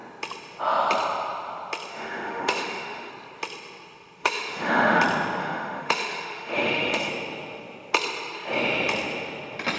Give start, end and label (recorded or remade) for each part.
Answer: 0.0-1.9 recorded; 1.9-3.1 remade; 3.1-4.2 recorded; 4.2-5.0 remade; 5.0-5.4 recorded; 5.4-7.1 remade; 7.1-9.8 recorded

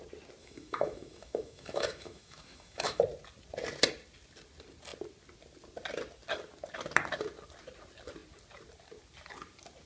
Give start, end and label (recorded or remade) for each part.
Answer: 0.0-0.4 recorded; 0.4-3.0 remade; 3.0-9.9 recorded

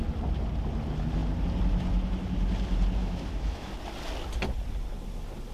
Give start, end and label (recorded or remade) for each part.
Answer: 0.0-3.0 recorded; 3.0-3.7 remade; 3.7-5.5 recorded

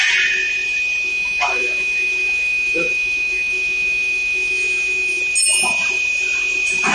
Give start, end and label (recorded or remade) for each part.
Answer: 0.0-1.1 recorded; 1.1-5.2 remade; 5.2-6.9 recorded